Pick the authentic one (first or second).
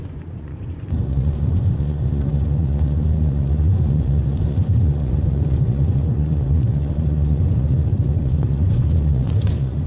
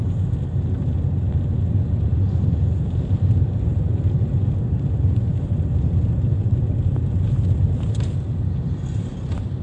second